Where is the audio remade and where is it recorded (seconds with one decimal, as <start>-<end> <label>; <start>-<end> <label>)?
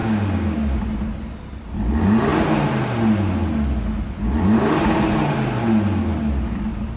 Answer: 0.0-0.8 remade; 0.8-7.0 recorded